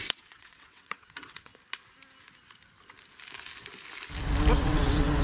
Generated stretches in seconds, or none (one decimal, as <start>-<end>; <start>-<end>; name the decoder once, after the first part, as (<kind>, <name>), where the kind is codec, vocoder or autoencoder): 0.0-1.5 (vocoder, WaveNeXt); 4.6-5.2